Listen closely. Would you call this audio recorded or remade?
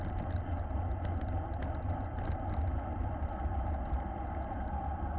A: recorded